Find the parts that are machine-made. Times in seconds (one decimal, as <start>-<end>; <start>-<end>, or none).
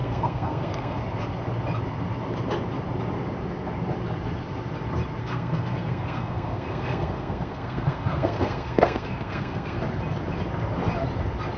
0.0-1.0; 5.2-9.8